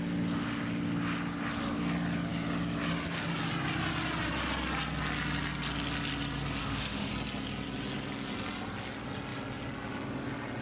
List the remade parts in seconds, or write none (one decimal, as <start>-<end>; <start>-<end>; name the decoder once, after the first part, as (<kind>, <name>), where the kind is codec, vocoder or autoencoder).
6.6-7.1 (autoencoder, DAC-VAE)